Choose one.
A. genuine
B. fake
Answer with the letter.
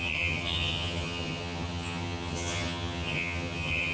B